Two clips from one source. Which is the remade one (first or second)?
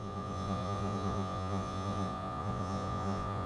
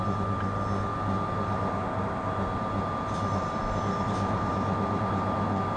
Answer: first